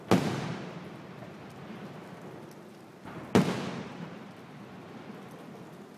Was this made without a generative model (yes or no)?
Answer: yes